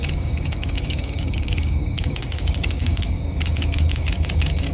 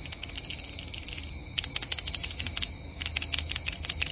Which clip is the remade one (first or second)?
first